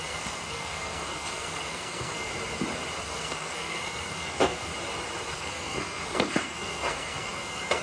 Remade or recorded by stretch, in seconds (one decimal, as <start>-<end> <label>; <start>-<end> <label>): 0.0-2.3 remade; 2.3-3.0 recorded; 3.0-4.7 remade; 4.7-5.3 recorded; 5.3-7.8 remade